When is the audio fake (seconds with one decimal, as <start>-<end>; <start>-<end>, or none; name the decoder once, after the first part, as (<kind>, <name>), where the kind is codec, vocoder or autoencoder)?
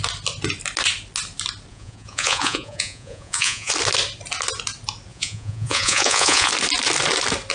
1.7-3.7 (vocoder, Vocos); 5.1-6.5